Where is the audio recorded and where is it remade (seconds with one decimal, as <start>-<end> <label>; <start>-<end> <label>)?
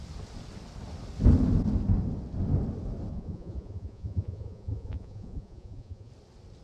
0.0-3.1 recorded; 3.1-6.1 remade; 6.1-6.6 recorded